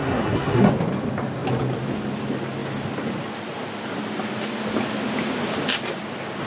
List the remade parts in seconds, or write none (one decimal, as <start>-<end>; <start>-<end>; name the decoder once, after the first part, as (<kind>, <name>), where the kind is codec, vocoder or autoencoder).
0.0-0.7 (codec, SNAC)